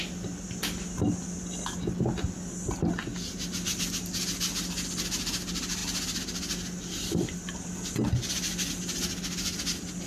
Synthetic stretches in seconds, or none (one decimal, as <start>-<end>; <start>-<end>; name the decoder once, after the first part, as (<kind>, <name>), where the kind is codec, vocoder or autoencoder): none

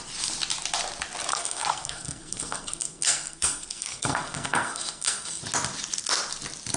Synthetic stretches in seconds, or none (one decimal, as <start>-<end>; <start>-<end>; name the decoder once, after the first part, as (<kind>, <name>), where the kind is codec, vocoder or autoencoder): 1.3-5.4 (codec, SNAC)

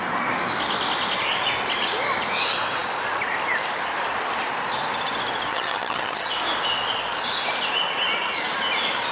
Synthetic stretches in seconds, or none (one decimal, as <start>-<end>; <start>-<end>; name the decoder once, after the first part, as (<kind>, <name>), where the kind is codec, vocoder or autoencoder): 5.5-6.3 (vocoder, HiFi-GAN)

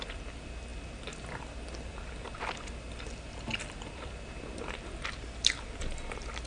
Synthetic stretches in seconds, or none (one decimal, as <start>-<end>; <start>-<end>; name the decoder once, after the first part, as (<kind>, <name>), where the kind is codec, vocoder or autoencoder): none

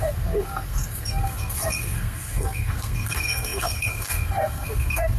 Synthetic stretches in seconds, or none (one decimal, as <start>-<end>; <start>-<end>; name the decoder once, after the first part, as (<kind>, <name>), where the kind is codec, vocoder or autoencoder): 0.0-5.2 (codec, SNAC)

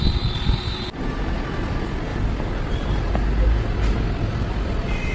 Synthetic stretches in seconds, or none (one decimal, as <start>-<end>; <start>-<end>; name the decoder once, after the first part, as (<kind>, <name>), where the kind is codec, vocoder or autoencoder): 2.1-2.9 (vocoder, BigVGAN v2)

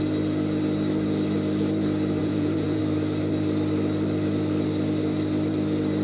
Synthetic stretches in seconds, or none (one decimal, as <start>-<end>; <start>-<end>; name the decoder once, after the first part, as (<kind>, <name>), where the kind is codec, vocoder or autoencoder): 2.2-2.8 (vocoder, Vocos)